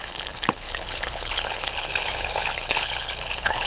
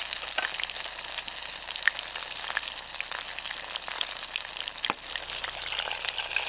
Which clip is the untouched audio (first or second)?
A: second